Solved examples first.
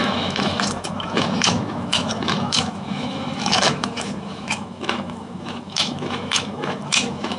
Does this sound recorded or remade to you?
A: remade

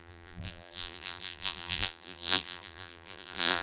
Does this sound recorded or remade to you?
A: remade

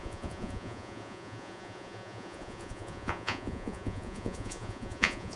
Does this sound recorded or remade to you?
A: remade